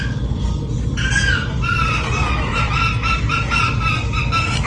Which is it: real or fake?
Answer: real